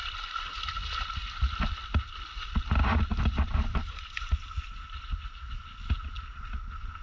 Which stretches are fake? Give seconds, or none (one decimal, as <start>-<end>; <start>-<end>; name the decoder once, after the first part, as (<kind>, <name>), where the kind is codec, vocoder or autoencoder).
none